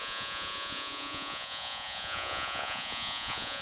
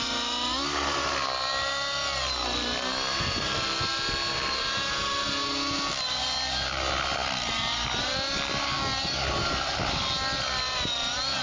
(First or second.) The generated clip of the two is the first